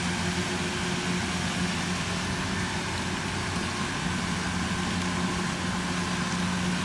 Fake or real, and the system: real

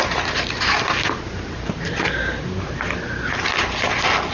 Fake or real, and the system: real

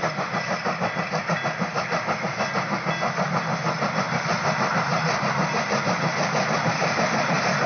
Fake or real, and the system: real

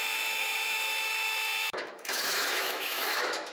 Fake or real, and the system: fake, autoencoder, DAC-VAE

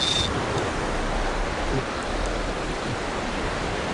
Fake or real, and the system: real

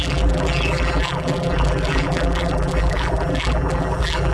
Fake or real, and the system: fake, vocoder, BigVGAN v2